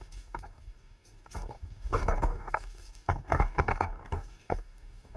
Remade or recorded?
remade